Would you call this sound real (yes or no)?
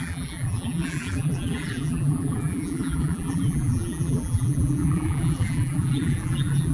no